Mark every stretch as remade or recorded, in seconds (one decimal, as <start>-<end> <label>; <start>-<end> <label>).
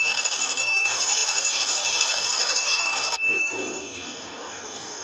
0.0-5.0 remade